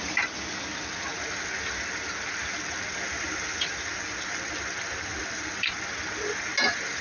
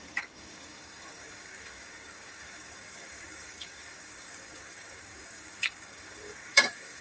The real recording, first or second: first